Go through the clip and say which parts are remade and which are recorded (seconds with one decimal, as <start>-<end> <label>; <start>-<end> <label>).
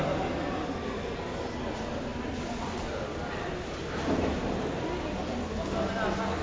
0.0-6.4 recorded